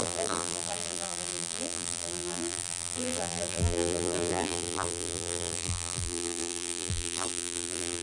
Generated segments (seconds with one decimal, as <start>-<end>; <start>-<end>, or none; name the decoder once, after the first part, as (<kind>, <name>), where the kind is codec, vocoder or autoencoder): 0.0-8.0 (vocoder, BigVGAN v2)